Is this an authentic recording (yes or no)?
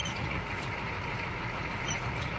no